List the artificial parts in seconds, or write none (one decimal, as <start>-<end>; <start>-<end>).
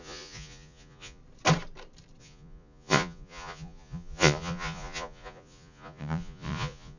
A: 0.0-1.2; 2.2-7.0